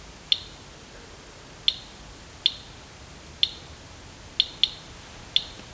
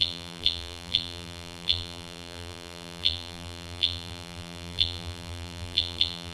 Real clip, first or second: first